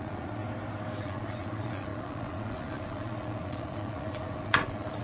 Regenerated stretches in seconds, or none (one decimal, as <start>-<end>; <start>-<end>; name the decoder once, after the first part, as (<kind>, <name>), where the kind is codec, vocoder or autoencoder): 0.0-0.4 (vocoder, Vocos); 1.0-5.0

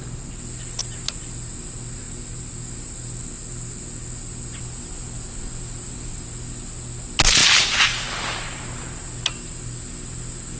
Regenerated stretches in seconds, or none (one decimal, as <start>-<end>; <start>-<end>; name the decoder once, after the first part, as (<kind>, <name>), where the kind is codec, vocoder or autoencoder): 7.4-8.6 (vocoder, BigVGAN v2)

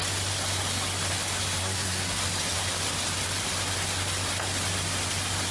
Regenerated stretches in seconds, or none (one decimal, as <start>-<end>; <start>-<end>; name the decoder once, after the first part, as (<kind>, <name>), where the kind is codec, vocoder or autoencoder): 1.6-2.2 (codec, SNAC)

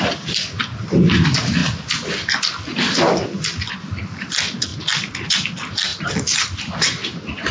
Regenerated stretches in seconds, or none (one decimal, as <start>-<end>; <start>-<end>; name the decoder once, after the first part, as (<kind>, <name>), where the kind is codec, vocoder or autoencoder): 0.0-1.6 (vocoder, BigVGAN v2); 3.7-4.7; 5.3-5.9; 6.6-7.5

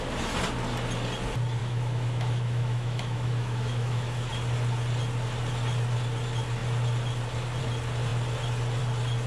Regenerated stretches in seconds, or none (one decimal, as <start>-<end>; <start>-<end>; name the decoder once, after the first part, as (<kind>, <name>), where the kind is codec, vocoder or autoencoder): 1.6-4.3 (autoencoder, DAC-VAE)

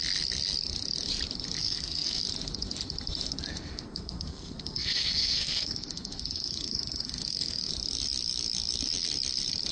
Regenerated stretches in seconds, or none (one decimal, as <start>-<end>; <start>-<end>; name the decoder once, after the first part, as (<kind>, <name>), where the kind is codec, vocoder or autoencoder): 1.6-2.2 (codec, SNAC); 3.5-7.7

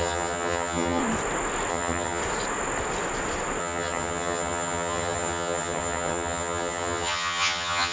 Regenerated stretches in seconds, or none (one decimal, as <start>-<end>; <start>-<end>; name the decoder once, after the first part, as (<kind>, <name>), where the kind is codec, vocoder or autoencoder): 0.0-1.0 (vocoder, HiFi-GAN); 1.7-2.2; 3.6-7.9